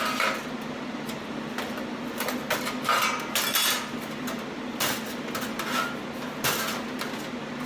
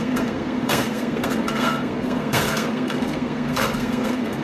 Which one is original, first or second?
first